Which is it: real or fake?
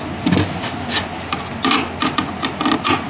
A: real